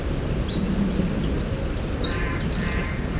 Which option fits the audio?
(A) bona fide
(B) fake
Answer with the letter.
A